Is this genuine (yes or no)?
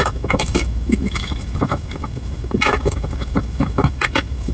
no